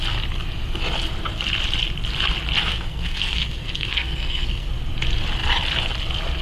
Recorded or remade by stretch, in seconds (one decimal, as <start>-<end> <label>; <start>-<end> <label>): 0.0-2.7 recorded; 2.7-4.7 remade; 4.7-6.4 recorded